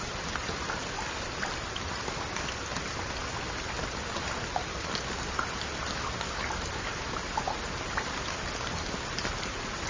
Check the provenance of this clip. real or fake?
real